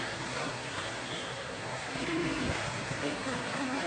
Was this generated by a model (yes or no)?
yes